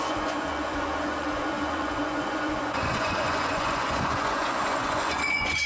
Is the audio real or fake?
fake